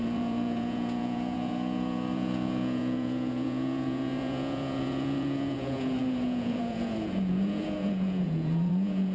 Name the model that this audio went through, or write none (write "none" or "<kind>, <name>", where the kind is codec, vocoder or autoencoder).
vocoder, Vocos